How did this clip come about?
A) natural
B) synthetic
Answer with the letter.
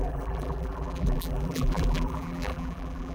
B